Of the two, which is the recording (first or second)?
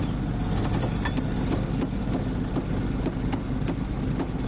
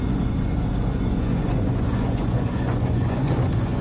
first